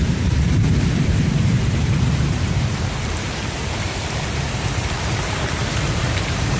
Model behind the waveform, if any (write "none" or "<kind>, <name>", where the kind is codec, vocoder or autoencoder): vocoder, BigVGAN v2